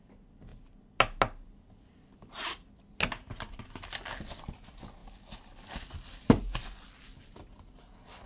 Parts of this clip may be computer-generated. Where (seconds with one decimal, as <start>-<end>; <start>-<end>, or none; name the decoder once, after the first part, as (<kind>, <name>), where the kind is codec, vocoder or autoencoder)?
none

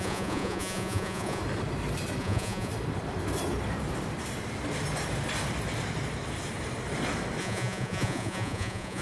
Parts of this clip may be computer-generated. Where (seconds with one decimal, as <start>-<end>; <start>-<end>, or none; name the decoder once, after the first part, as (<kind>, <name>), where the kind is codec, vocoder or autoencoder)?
0.0-1.4 (vocoder, Vocos); 2.2-2.7; 7.4-9.0

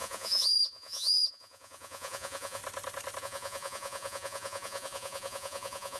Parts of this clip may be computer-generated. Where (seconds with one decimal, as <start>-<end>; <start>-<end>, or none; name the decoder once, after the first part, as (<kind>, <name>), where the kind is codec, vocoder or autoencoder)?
0.0-2.6 (vocoder, Vocos); 3.2-6.0

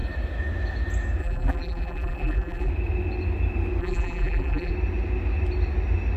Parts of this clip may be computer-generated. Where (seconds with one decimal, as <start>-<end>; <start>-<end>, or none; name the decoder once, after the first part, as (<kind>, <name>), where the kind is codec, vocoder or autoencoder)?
1.2-2.7 (vocoder, BigVGAN v2); 3.8-4.7

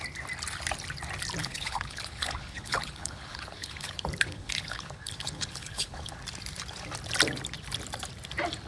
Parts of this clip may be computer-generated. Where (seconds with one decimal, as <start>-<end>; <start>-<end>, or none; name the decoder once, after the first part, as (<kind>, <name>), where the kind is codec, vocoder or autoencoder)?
1.4-6.2 (codec, HILCodec)

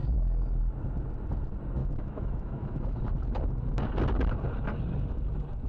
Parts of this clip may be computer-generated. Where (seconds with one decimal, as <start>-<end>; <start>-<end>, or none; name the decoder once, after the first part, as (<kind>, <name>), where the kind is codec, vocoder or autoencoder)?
1.8-3.0 (autoencoder, DAC-VAE)